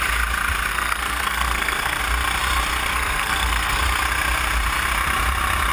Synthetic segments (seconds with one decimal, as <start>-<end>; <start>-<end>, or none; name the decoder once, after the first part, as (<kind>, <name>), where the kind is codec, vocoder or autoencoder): 0.7-2.0 (codec, SNAC); 2.9-3.8